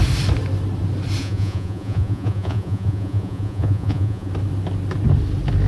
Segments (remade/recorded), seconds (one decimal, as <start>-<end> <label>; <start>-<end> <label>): 0.0-1.2 recorded; 1.2-4.3 remade; 4.3-5.7 recorded